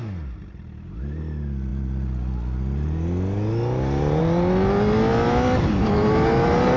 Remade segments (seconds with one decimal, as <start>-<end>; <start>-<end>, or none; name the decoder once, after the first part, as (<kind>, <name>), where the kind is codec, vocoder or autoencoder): none